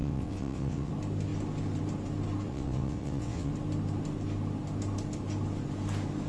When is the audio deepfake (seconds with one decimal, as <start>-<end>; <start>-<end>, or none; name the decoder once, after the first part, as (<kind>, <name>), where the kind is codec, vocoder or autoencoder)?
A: 0.0-0.9 (vocoder, WaveNeXt); 2.5-3.5